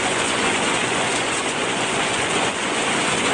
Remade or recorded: remade